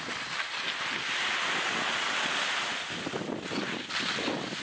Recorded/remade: recorded